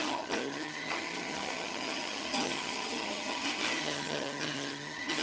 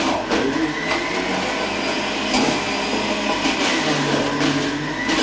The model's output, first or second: first